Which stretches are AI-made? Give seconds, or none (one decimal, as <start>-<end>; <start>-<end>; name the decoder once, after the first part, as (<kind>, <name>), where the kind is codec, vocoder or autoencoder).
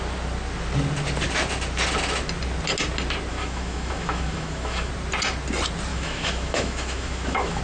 3.3-4.9 (autoencoder, DAC-VAE); 5.9-7.6